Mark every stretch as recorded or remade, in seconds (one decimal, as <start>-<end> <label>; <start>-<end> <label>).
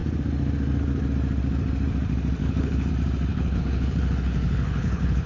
0.0-2.4 recorded; 2.4-2.9 remade; 2.9-3.3 recorded; 3.3-5.3 remade